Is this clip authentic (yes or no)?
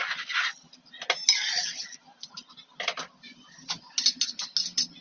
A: yes